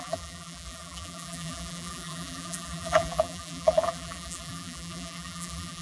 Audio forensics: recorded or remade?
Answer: remade